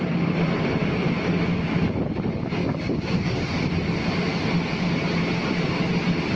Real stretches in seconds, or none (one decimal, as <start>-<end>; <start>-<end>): 0.0-2.6; 3.4-6.3